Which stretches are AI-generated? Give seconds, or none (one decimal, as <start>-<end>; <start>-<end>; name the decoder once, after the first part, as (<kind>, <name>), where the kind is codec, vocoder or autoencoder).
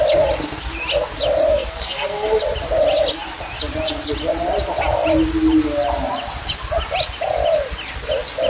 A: 1.5-2.4 (codec, SNAC)